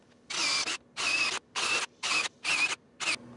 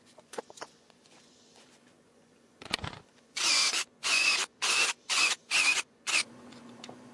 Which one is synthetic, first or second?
second